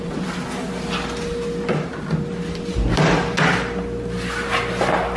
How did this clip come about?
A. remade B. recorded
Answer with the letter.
B